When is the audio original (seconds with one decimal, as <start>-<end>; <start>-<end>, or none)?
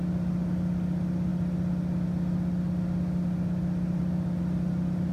0.0-5.1